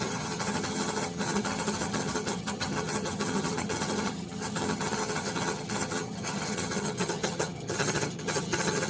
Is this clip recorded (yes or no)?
no